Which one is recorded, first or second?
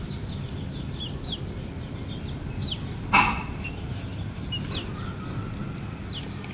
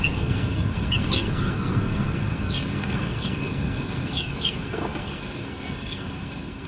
first